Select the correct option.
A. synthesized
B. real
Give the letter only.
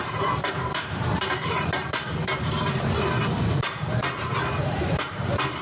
A